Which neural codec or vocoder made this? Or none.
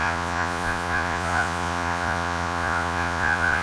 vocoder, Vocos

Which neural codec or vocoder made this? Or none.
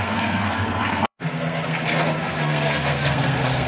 codec, SNAC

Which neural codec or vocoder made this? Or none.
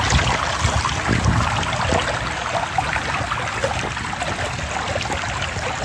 none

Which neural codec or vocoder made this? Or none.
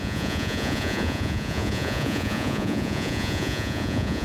vocoder, Vocos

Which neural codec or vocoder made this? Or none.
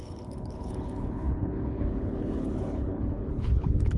codec, HILCodec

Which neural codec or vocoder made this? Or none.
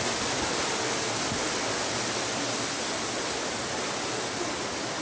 none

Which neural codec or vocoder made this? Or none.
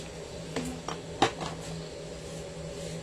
none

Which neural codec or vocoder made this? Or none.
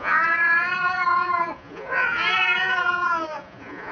vocoder, Vocos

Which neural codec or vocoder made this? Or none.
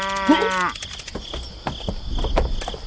none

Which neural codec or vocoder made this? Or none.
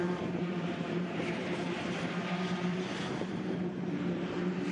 vocoder, BigVGAN v2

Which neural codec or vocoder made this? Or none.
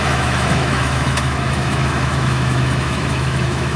autoencoder, DAC-VAE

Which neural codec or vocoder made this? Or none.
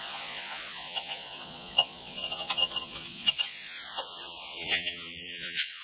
vocoder, Vocos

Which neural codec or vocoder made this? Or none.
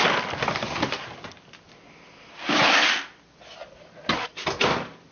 none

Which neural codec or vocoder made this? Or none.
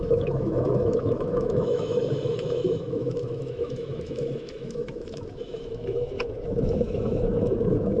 autoencoder, DAC-VAE